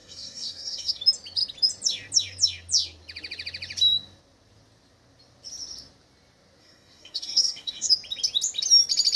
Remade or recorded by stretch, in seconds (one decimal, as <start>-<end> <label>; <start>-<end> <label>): 0.0-1.0 remade; 1.0-6.6 recorded; 6.6-7.9 remade; 7.9-9.2 recorded